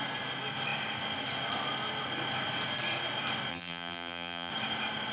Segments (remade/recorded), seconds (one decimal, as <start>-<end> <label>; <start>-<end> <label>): 0.0-3.5 recorded; 3.5-4.5 remade; 4.5-5.1 recorded